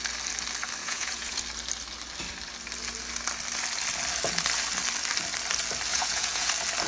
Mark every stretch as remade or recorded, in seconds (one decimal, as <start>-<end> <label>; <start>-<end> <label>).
0.0-0.8 recorded; 0.8-1.4 remade; 1.4-5.9 recorded; 5.9-6.5 remade; 6.5-6.9 recorded